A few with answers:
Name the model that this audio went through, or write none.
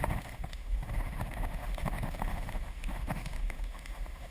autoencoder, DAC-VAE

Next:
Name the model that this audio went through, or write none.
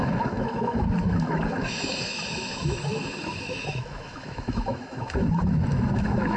autoencoder, DAC-VAE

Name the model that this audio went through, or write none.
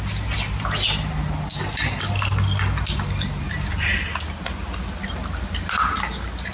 none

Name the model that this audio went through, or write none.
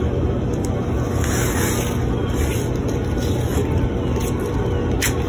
none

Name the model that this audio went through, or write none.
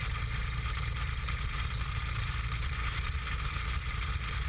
none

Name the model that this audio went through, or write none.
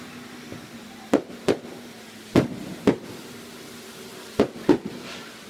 none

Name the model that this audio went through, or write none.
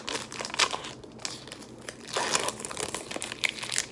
none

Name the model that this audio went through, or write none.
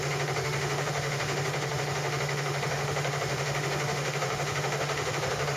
autoencoder, DAC-VAE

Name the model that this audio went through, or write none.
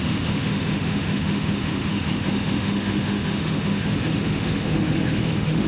autoencoder, DAC-VAE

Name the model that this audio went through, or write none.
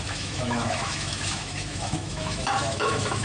autoencoder, DAC-VAE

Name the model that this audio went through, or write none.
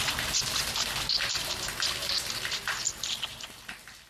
none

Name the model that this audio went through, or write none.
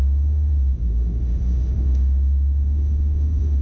autoencoder, DAC-VAE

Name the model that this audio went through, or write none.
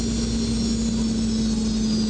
none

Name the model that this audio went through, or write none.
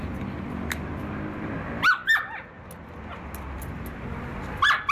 none